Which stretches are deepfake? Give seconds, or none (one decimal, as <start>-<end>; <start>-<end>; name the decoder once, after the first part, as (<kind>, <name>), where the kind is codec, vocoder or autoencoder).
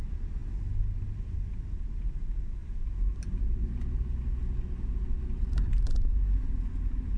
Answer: none